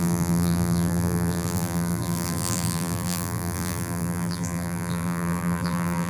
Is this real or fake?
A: fake